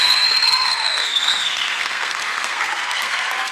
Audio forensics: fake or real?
fake